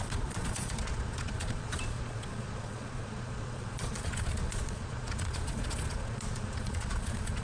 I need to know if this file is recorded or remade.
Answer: remade